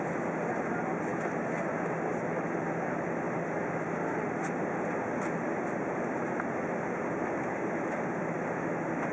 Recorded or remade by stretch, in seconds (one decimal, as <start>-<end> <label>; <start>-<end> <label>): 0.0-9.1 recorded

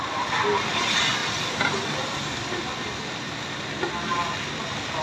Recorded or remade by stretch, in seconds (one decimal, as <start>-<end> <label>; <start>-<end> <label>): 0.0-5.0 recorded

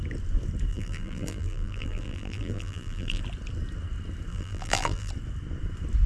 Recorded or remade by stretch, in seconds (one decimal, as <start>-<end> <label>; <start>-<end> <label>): 0.0-0.7 recorded; 0.7-3.2 remade; 3.2-4.3 recorded; 4.3-5.1 remade; 5.1-6.1 recorded